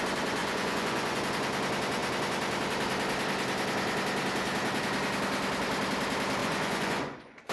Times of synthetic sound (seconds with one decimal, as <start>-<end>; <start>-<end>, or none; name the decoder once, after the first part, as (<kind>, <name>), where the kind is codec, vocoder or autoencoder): 0.4-1.2 (vocoder, Vocos); 6.4-7.5